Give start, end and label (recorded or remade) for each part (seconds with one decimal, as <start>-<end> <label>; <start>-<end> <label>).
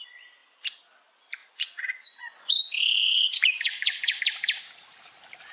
0.0-1.4 recorded; 1.4-4.2 remade; 4.2-5.5 recorded